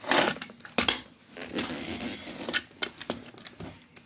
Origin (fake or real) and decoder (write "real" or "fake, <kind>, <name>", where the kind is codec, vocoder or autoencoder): real